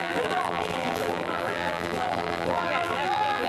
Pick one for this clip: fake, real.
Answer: fake